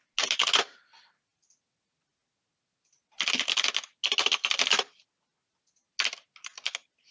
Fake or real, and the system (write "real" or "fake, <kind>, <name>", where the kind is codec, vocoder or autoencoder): real